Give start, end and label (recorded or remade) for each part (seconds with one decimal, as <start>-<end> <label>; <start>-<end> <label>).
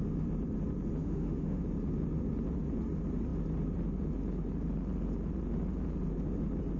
0.0-1.0 recorded; 1.0-1.6 remade; 1.6-6.8 recorded